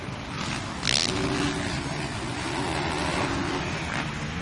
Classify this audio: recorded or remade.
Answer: recorded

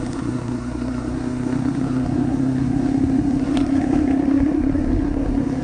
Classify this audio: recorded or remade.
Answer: remade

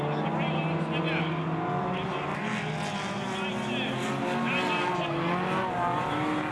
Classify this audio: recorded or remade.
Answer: recorded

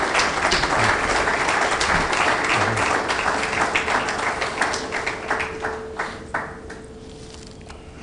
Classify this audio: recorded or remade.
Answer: recorded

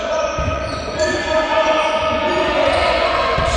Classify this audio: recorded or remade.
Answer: remade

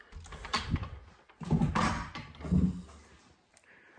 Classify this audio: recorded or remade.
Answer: recorded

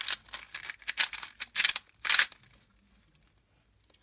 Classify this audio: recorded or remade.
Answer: recorded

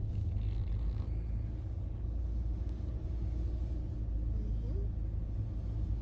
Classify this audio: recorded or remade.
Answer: recorded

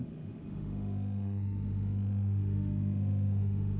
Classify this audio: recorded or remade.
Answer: remade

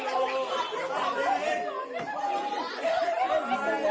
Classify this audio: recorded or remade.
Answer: recorded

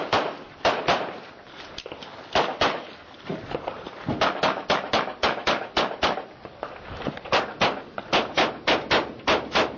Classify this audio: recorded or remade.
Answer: recorded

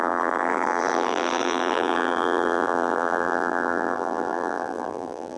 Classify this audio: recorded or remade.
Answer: remade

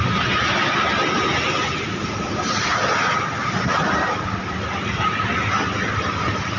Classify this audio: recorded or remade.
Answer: recorded